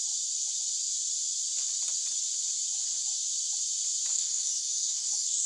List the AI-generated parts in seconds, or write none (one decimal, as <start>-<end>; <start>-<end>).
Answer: 4.1-5.5